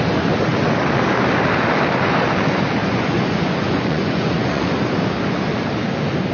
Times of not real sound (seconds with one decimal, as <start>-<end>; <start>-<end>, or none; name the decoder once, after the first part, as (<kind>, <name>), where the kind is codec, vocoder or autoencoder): 2.8-4.7 (vocoder, Vocos)